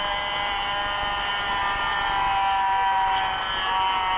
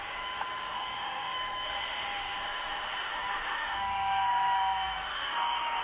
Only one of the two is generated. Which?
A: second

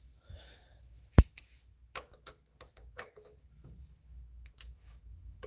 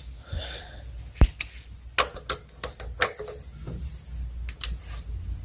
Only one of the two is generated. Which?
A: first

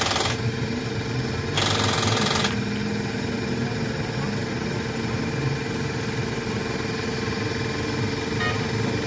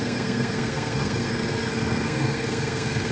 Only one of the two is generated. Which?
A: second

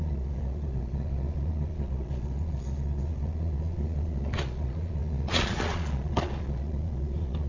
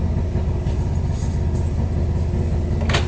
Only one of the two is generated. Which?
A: first